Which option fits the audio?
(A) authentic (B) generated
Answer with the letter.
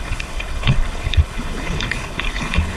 B